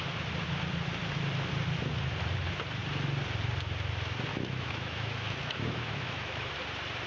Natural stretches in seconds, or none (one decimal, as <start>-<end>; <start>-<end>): 0.0-4.3; 6.5-7.1